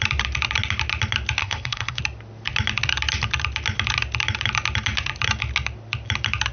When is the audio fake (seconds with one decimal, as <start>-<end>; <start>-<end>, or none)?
1.4-2.0